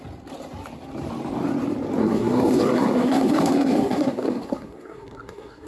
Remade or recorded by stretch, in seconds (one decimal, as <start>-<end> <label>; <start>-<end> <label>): 0.0-2.0 recorded; 2.0-5.7 remade